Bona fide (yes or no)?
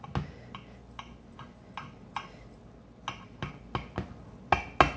yes